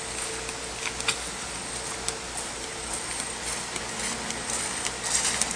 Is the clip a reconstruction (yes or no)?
no